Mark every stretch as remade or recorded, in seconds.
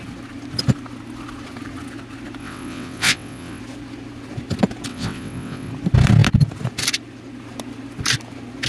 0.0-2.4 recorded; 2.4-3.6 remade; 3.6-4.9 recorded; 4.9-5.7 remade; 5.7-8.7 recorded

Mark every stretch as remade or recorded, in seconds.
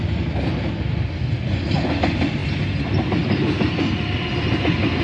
0.0-5.0 recorded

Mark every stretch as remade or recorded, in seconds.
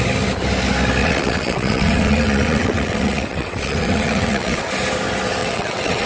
0.0-1.0 recorded; 1.0-4.7 remade; 4.7-5.4 recorded; 5.4-6.1 remade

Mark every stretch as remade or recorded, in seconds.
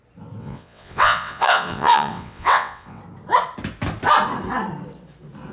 0.0-0.4 recorded; 0.4-3.0 remade; 3.0-5.5 recorded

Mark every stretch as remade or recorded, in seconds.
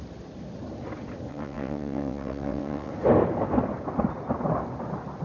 0.0-1.3 recorded; 1.3-2.9 remade; 2.9-5.2 recorded